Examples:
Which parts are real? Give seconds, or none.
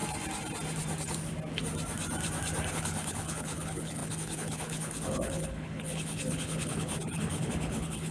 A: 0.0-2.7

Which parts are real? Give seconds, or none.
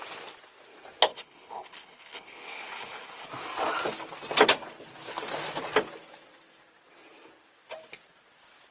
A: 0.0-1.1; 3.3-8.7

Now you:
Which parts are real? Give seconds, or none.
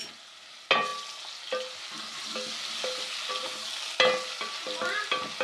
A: 0.0-5.4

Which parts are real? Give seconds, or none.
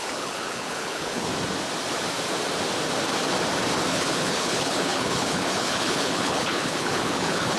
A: 1.3-3.9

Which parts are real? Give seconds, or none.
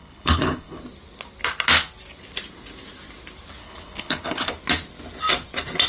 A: 0.8-3.6; 4.5-5.9